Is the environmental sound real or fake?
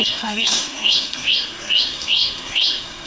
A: fake